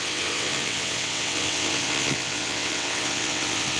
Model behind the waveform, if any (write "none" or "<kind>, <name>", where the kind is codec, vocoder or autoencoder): vocoder, WaveNeXt